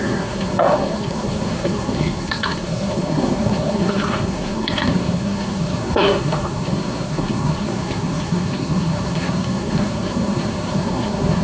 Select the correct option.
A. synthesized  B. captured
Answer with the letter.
A